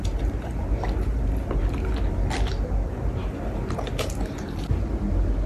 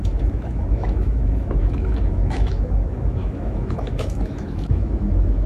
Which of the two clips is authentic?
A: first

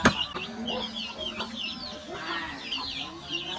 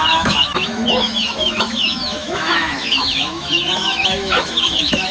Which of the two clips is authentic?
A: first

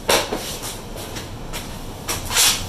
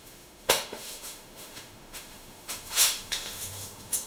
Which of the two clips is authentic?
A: first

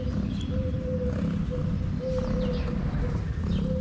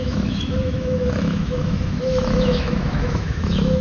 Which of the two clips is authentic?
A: first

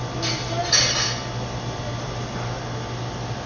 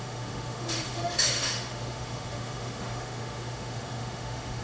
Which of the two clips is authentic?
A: first